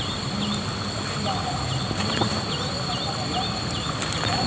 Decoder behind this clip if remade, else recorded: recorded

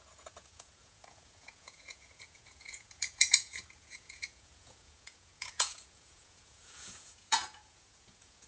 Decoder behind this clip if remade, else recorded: remade, vocoder, Vocos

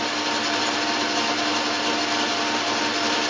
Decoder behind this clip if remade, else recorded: recorded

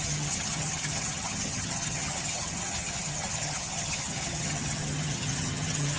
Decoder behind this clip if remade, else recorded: remade, vocoder, HiFi-GAN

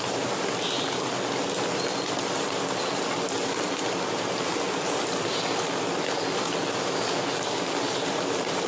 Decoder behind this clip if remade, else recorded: recorded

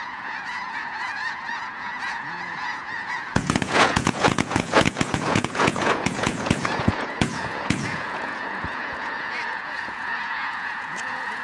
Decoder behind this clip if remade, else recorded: remade, vocoder, Vocos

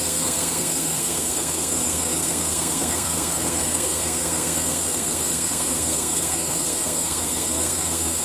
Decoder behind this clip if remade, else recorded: remade, codec, SNAC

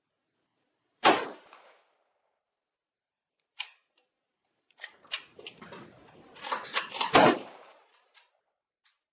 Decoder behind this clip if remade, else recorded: remade, vocoder, BigVGAN v2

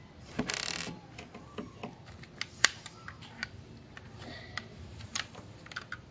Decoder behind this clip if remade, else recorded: recorded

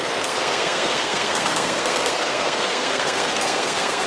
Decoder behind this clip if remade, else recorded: remade, codec, SNAC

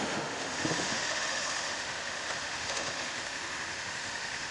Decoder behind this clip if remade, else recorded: remade, autoencoder, DAC-VAE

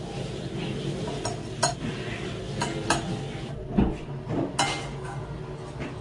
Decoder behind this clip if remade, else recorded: recorded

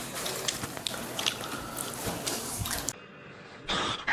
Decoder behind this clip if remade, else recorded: recorded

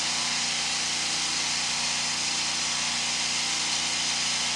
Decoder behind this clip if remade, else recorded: recorded